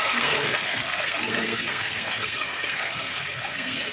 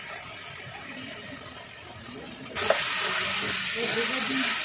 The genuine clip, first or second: second